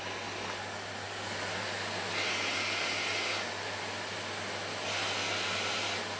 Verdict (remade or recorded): recorded